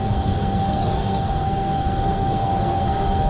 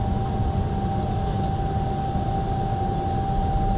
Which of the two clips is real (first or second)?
second